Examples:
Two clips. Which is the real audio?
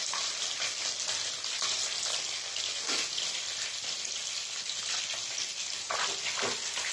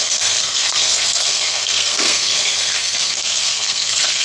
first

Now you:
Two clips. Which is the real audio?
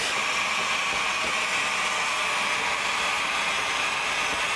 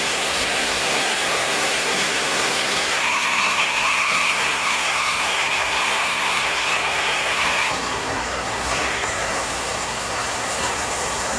first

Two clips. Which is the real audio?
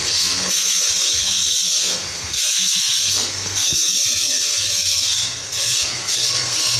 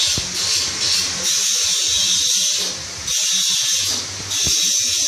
second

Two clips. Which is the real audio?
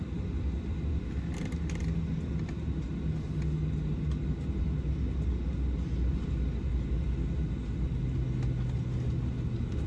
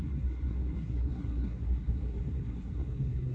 first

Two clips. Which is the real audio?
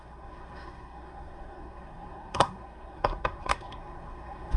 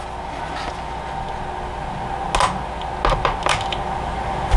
second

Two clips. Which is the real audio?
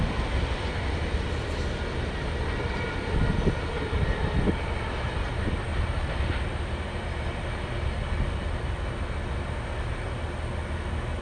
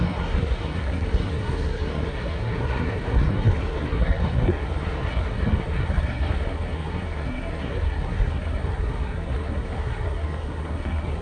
first